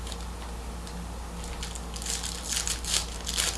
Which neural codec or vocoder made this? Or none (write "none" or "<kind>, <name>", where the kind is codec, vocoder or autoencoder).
none